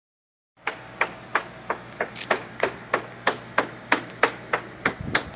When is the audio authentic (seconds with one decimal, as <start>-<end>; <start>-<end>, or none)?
0.0-5.4